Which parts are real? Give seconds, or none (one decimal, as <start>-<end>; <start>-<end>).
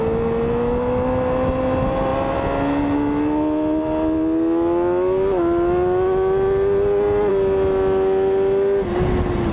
0.0-9.5